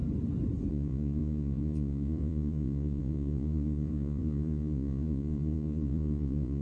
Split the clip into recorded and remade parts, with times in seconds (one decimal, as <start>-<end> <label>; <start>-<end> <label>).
0.0-0.7 recorded; 0.7-6.6 remade